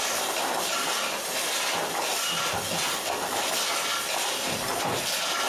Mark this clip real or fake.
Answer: real